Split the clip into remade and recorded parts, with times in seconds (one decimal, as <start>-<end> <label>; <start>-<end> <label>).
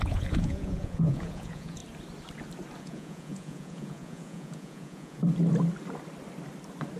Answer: 0.0-1.8 remade; 1.8-2.8 recorded; 2.8-5.2 remade; 5.2-7.0 recorded